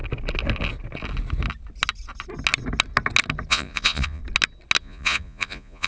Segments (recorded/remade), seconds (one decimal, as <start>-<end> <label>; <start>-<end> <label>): 0.0-3.5 recorded; 3.5-4.2 remade; 4.2-4.8 recorded; 4.8-5.9 remade